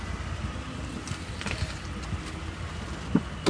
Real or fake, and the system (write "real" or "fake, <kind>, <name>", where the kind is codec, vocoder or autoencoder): real